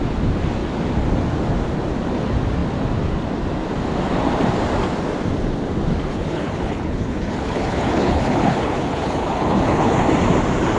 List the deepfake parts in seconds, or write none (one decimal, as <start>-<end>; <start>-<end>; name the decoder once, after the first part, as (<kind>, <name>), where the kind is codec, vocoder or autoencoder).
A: 6.1-10.0 (codec, HILCodec)